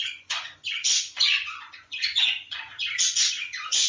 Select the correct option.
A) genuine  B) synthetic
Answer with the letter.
B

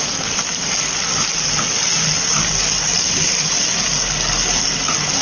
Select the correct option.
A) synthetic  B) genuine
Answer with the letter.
B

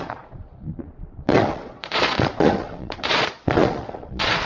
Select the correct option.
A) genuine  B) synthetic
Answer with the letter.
B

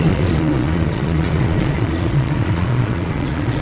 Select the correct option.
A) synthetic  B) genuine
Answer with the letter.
A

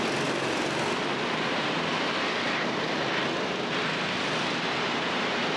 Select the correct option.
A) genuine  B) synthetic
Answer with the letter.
A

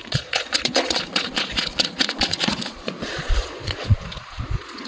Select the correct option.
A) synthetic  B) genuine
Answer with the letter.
A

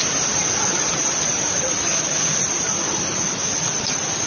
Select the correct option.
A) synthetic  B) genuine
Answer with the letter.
B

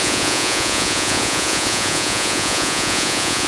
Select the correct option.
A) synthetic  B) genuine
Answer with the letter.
A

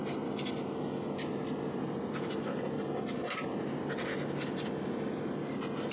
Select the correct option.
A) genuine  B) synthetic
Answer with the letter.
A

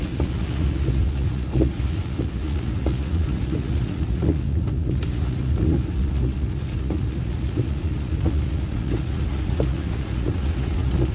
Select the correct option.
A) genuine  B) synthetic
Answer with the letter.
B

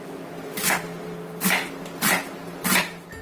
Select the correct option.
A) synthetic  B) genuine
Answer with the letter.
B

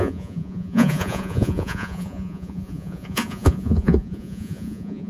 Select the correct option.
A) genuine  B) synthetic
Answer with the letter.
B